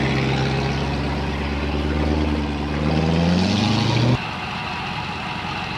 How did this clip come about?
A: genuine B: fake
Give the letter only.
A